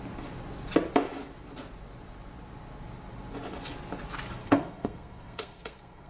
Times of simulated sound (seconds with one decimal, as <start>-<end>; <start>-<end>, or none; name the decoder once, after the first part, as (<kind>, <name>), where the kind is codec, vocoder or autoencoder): 4.4-6.1 (codec, SNAC)